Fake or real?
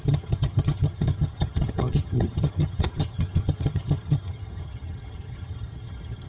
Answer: fake